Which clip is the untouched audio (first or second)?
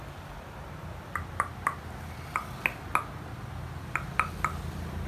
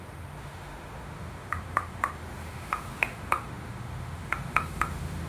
first